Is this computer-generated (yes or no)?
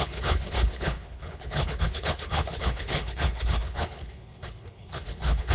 yes